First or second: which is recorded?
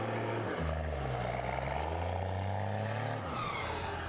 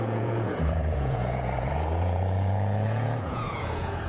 first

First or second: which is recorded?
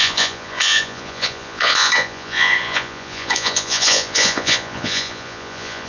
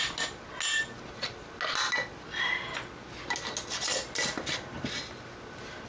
second